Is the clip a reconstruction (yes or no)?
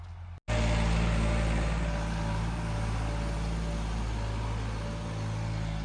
no